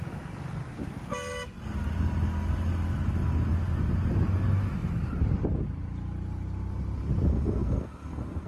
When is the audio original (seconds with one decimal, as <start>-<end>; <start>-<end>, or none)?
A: 0.0-7.3